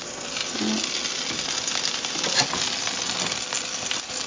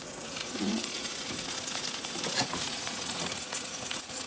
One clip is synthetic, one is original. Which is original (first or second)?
first